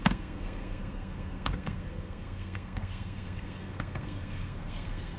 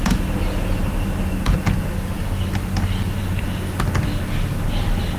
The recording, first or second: second